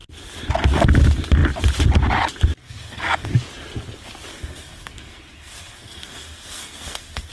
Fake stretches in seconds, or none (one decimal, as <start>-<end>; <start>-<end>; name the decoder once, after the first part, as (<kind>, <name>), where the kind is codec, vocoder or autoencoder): 2.6-3.3 (codec, SNAC); 4.3-7.3